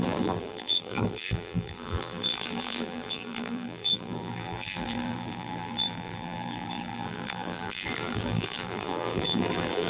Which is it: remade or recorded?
remade